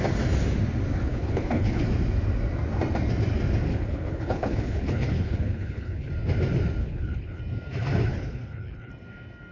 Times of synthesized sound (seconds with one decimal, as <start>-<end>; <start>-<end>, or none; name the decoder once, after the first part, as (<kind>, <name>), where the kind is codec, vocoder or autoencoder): 1.1-1.8 (codec, HILCodec); 3.7-6.1; 6.8-7.4; 8.1-8.9